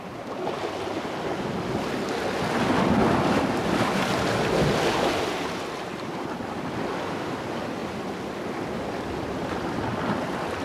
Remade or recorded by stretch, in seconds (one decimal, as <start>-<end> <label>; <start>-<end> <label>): 0.0-10.6 recorded